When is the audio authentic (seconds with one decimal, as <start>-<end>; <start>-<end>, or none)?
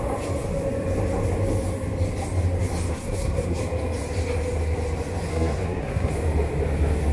0.0-2.9; 3.6-5.3; 6.1-7.1